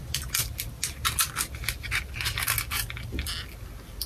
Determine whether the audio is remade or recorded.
recorded